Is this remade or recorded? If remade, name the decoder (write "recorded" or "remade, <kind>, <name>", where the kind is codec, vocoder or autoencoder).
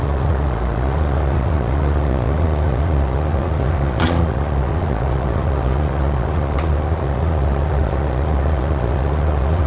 remade, vocoder, Vocos